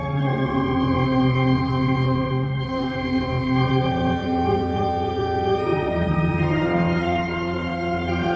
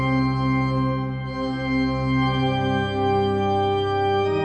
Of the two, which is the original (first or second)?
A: second